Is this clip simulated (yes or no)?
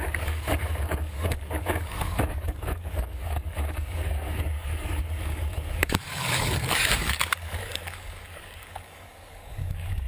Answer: yes